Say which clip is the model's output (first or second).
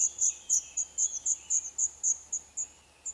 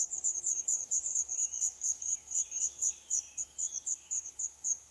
second